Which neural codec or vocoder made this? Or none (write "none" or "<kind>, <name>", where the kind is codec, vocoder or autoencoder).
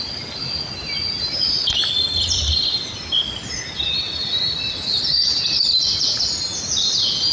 none